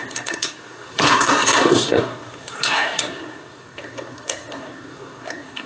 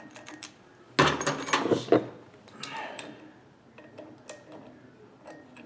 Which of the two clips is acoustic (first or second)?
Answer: second